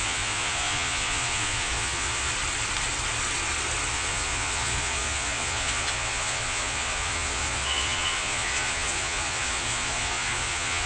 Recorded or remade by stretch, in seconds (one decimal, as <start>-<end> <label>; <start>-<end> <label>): 0.0-2.3 remade; 2.3-3.9 recorded; 3.9-10.9 remade